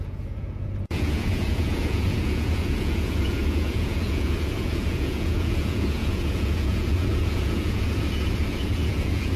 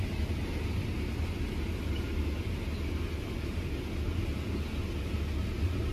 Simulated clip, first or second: first